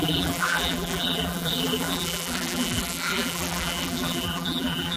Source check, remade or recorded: remade